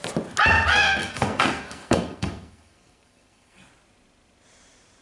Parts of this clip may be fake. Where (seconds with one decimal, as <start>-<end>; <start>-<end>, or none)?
0.7-3.7